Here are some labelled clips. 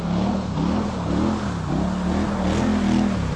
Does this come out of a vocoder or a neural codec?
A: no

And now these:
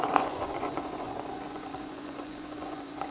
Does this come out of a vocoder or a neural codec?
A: yes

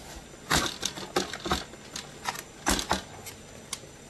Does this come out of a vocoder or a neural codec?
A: no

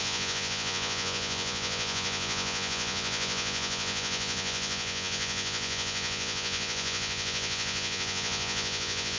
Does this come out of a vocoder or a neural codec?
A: yes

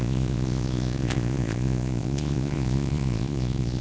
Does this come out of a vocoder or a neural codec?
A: yes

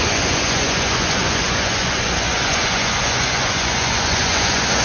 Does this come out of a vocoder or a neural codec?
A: yes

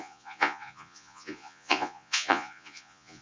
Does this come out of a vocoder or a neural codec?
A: yes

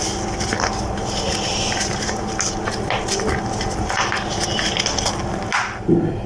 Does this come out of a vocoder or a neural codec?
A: no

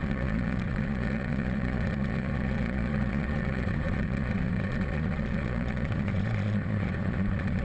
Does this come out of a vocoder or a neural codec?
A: yes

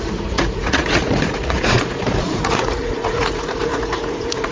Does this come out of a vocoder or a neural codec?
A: yes